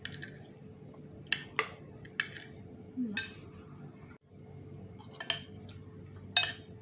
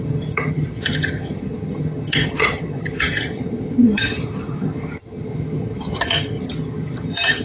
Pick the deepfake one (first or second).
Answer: second